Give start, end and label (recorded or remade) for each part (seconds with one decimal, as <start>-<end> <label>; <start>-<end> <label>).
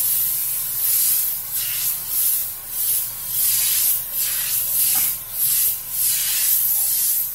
0.0-7.3 recorded